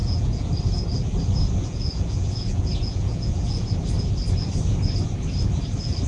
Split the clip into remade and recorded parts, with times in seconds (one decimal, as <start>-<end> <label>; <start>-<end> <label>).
0.0-0.5 remade; 0.5-1.6 recorded; 1.6-3.7 remade; 3.7-6.1 recorded